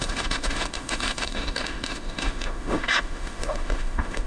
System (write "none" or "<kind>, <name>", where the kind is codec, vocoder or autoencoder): autoencoder, DAC-VAE